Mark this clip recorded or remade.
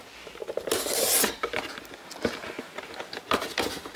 recorded